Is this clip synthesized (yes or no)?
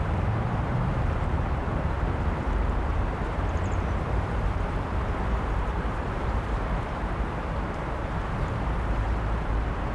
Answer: yes